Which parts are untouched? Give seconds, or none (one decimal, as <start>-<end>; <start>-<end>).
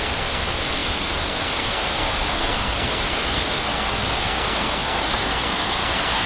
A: none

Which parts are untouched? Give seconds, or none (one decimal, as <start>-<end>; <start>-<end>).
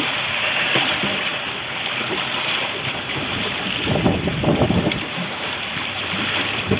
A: 4.3-6.0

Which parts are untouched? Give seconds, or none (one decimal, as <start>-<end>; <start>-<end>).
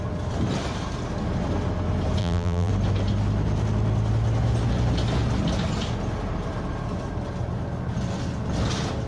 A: 0.0-2.2; 2.7-9.1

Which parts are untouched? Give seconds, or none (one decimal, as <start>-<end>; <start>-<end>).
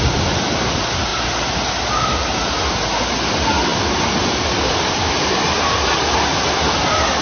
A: 0.0-7.2